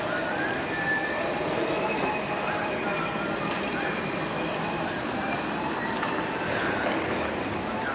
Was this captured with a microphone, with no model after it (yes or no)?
no